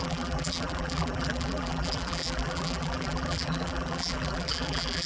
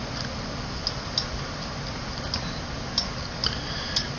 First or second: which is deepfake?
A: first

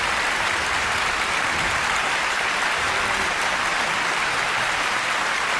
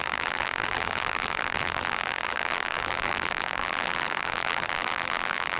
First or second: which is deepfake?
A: second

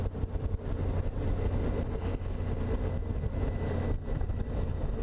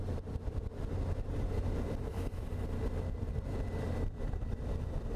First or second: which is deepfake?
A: second